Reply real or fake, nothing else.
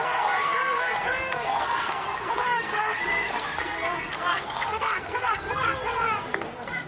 fake